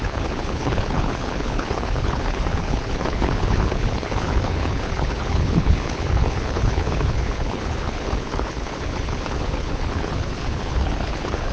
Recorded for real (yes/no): no